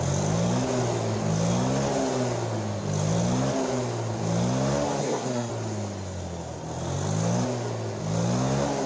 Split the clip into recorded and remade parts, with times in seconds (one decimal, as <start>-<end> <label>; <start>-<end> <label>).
0.0-5.0 recorded; 5.0-5.5 remade; 5.5-8.9 recorded